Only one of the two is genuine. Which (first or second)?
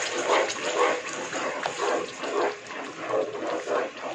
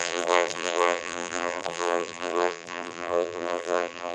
first